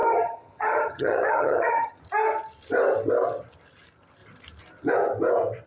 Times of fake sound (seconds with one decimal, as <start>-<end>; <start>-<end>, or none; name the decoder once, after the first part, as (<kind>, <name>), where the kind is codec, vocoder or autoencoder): 0.0-2.0 (vocoder, HiFi-GAN)